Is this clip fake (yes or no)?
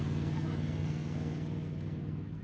yes